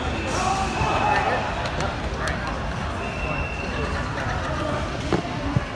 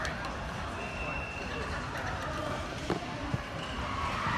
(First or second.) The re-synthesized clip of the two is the second